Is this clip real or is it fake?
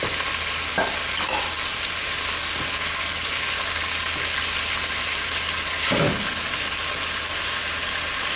real